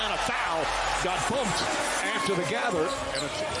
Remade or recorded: recorded